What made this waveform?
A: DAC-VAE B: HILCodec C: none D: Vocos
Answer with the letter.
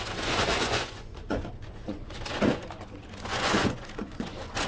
D